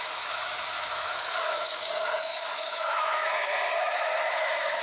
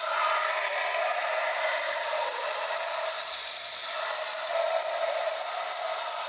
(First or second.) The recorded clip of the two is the second